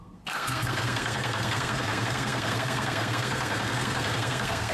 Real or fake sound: fake